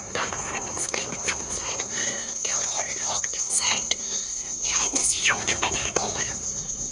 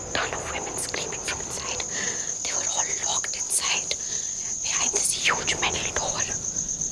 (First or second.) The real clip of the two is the second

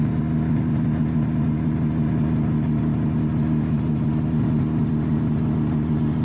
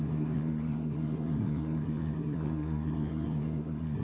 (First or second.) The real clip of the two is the first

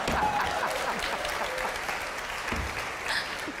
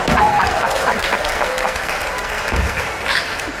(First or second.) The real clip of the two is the first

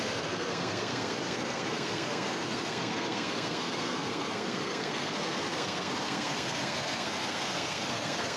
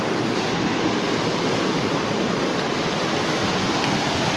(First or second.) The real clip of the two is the second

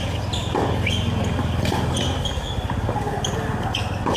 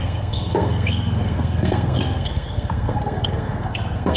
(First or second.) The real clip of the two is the first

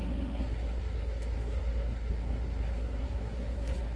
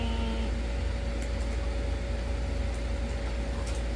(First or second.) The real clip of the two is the second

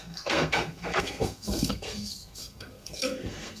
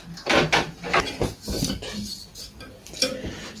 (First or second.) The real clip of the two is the second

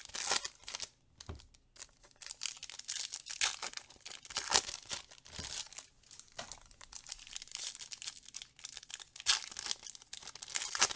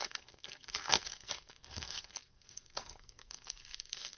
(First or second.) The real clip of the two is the first